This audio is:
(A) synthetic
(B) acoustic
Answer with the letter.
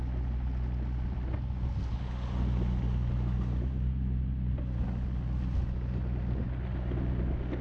B